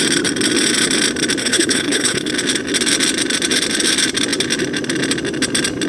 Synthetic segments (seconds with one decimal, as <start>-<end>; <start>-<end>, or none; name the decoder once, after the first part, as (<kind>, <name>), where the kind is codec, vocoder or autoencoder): 1.4-2.3 (codec, HILCodec)